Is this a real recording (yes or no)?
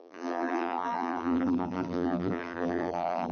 no